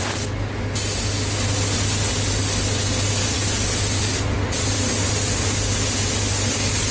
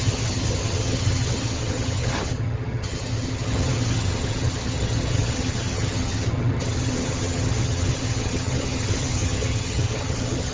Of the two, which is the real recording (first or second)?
first